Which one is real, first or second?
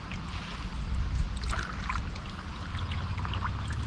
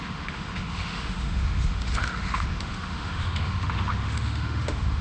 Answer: first